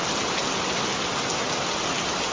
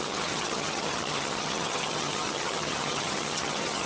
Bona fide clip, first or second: first